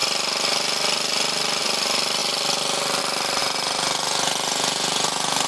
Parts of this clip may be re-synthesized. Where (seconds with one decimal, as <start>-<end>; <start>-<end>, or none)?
3.4-5.5